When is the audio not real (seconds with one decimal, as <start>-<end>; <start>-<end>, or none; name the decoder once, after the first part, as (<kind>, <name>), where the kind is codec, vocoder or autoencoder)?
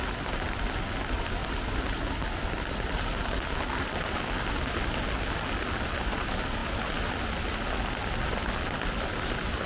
none